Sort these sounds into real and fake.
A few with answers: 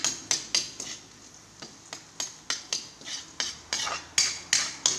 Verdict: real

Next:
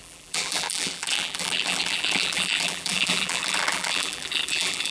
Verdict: fake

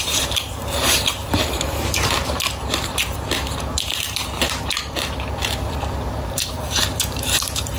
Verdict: fake